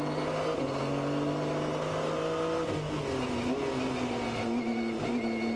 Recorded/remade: recorded